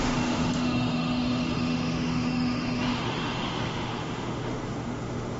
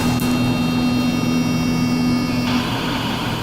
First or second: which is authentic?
second